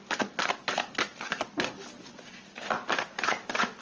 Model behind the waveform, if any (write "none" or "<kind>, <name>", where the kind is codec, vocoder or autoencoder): none